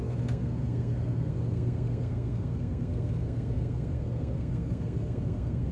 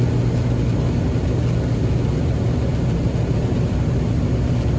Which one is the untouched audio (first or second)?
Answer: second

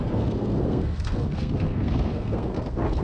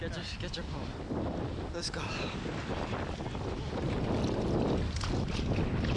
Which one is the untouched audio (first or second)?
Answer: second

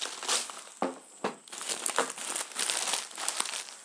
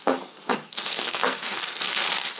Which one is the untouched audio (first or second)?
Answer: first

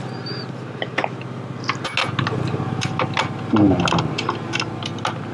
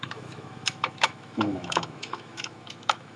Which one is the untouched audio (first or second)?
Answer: first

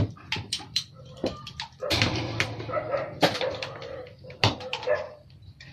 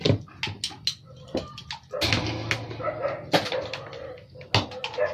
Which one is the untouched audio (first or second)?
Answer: second